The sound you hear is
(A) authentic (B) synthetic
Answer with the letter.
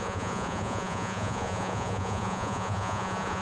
B